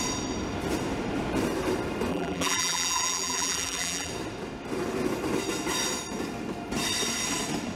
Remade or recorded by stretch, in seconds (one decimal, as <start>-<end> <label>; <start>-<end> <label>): 0.0-2.1 recorded; 2.1-4.1 remade; 4.1-7.8 recorded